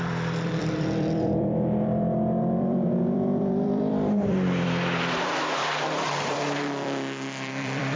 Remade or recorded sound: remade